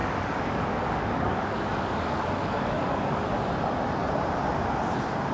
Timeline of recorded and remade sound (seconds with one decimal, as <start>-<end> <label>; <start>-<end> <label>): 0.0-3.2 remade; 3.2-5.3 recorded